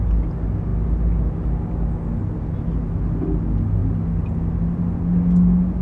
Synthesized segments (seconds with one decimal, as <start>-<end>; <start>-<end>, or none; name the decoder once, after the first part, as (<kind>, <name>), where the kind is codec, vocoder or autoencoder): none